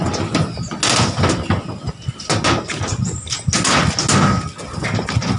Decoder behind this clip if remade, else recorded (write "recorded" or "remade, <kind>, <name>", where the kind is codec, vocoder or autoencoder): recorded